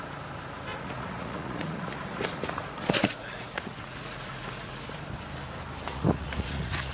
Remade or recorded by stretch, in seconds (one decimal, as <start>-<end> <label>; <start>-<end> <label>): 0.0-0.7 recorded; 0.7-4.8 remade; 4.8-5.9 recorded; 5.9-6.9 remade